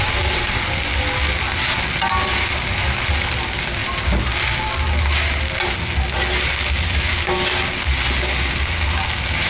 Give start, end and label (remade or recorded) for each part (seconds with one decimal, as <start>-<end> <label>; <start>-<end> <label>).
0.0-9.5 recorded